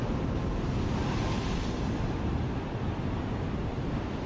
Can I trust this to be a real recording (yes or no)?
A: yes